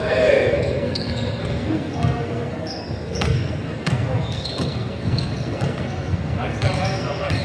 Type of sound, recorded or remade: remade